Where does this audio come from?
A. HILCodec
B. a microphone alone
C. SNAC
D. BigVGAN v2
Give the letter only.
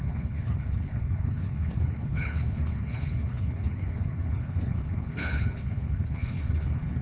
A